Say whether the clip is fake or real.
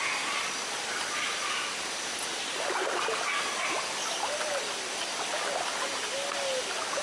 real